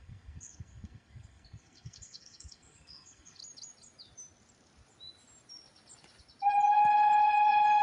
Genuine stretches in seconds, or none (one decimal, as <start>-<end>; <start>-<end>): 3.4-7.8

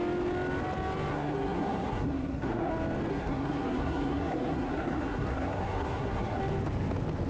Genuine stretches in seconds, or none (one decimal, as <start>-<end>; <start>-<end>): 0.0-1.1; 2.7-3.1; 6.4-7.3

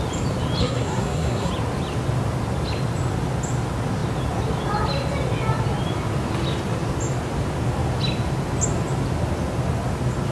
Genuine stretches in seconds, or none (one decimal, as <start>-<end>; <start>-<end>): 0.0-0.6; 1.5-10.3